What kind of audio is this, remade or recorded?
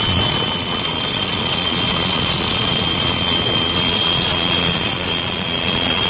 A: remade